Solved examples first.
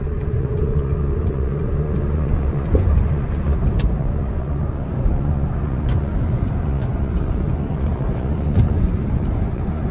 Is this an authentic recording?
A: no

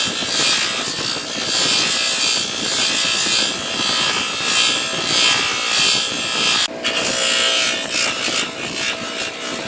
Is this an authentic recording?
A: yes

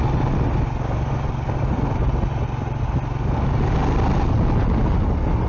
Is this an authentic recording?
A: yes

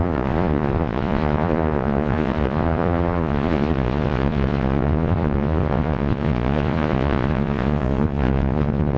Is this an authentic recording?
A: no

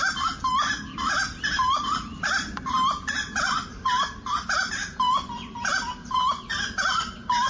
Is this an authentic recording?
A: yes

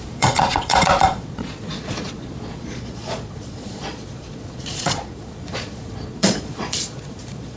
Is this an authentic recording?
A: no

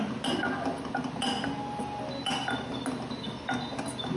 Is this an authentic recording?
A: yes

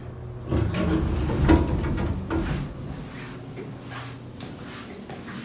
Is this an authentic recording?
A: yes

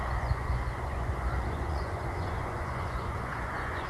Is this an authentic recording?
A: no